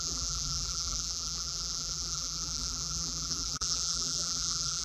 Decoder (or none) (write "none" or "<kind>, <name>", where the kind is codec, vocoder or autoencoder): vocoder, BigVGAN v2